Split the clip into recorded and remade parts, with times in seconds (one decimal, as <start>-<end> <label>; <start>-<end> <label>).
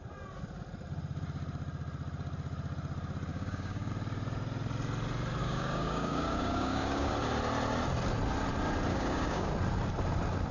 0.0-3.3 recorded; 3.3-3.9 remade; 3.9-5.4 recorded; 5.4-7.1 remade; 7.1-8.9 recorded; 8.9-9.5 remade; 9.5-10.5 recorded